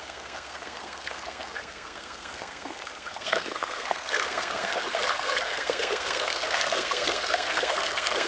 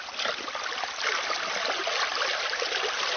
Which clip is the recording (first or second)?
second